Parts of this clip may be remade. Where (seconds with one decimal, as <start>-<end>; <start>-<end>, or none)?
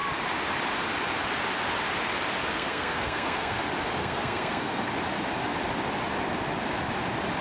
2.5-3.6; 4.0-4.9